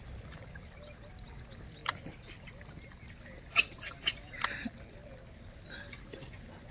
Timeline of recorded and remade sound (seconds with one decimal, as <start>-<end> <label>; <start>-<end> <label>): 0.0-6.7 recorded